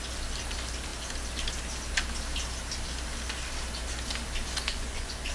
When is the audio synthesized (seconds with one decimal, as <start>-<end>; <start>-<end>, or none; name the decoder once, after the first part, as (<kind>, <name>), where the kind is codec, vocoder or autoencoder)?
4.7-5.3 (vocoder, Vocos)